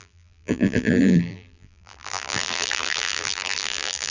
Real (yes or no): no